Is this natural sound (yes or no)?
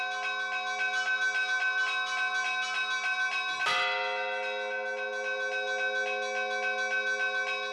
yes